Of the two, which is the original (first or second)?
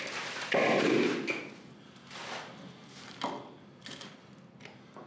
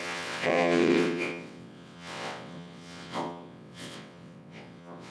first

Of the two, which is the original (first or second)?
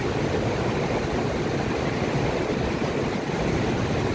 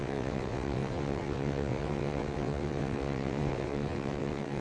first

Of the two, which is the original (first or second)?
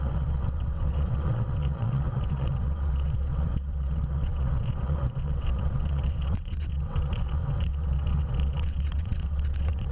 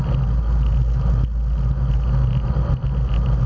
second